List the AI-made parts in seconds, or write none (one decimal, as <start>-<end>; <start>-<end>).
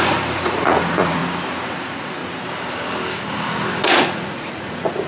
0.0-1.2; 1.7-2.2; 3.7-5.1